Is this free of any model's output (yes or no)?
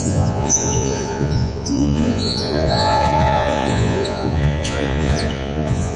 no